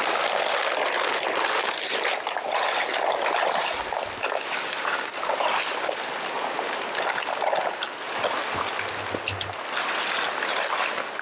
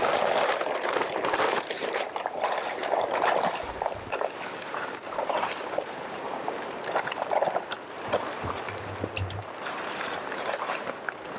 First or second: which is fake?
second